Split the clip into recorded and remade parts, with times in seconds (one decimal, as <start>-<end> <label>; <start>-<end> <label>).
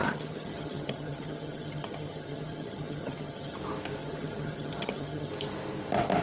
0.0-3.6 remade; 3.6-4.0 recorded; 4.0-5.3 remade; 5.3-6.2 recorded